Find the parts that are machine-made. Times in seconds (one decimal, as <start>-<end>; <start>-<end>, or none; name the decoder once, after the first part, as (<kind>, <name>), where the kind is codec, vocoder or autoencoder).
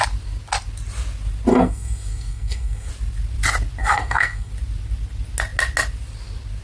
1.5-2.9 (codec, SNAC); 3.8-4.5